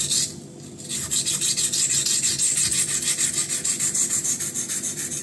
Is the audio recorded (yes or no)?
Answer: yes